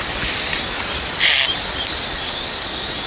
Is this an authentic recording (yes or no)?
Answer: yes